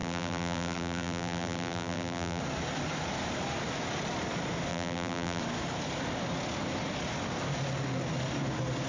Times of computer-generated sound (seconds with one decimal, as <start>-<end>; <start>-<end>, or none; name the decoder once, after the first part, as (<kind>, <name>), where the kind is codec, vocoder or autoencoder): 0.0-2.4 (vocoder, BigVGAN v2); 4.7-5.4